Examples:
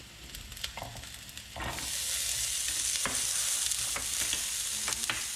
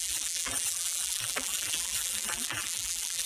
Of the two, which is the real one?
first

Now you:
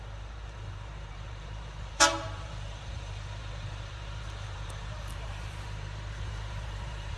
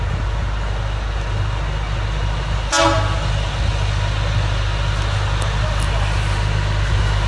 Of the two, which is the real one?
second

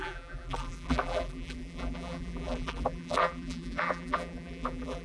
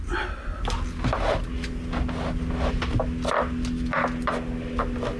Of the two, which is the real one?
second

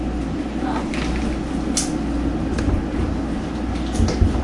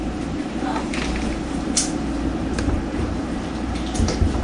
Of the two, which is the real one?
first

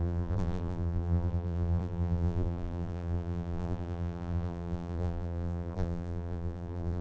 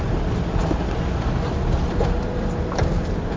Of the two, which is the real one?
second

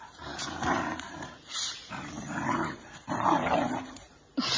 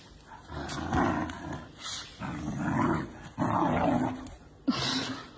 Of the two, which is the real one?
second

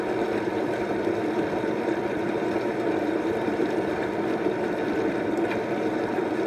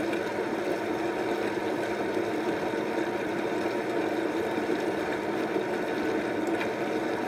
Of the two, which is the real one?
second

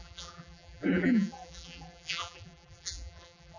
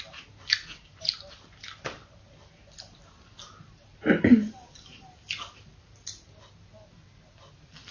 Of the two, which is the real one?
second